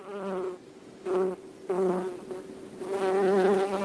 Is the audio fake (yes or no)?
no